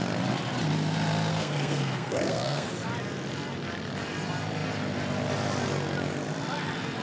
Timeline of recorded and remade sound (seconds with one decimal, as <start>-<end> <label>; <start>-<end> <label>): 0.0-1.3 recorded; 1.3-2.7 remade; 2.7-7.0 recorded